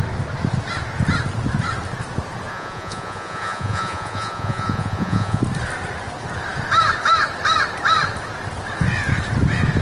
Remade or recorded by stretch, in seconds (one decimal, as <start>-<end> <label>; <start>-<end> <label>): 0.0-2.5 recorded; 2.5-5.4 remade; 5.4-9.8 recorded

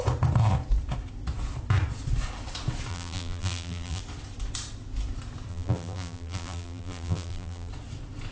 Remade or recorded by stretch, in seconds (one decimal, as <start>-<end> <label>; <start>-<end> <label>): 0.0-2.9 recorded; 2.9-4.0 remade; 4.0-5.5 recorded; 5.5-7.7 remade; 7.7-8.3 recorded

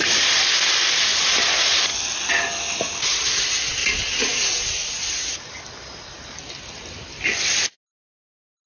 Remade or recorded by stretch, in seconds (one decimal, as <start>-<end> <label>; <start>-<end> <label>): 0.0-8.7 recorded

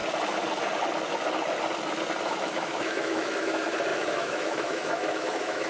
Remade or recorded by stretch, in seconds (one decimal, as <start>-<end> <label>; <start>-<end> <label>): 0.0-2.3 recorded; 2.3-5.7 remade

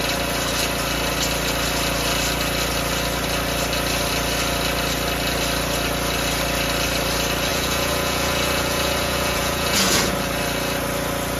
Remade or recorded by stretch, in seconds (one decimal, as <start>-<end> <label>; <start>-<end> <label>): 0.0-7.5 recorded; 7.5-10.1 remade; 10.1-11.4 recorded

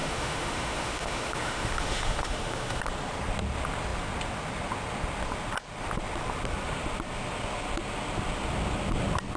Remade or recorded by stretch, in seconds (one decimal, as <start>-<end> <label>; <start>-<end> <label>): 0.0-2.8 remade; 2.8-9.4 recorded